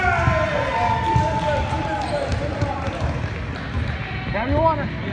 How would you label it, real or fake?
real